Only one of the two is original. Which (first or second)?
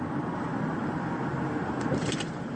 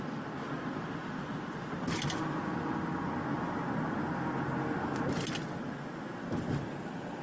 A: second